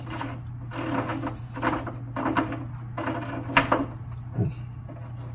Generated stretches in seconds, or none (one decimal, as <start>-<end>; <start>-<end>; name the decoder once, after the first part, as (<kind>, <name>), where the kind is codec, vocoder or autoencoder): none